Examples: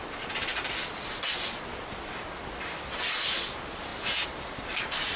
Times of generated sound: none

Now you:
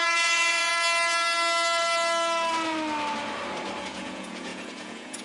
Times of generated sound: 0.0-0.7 (vocoder, Vocos); 3.8-5.2

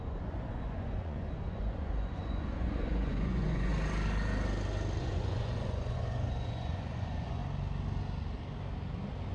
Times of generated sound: 0.0-3.7 (vocoder, Vocos); 5.0-7.4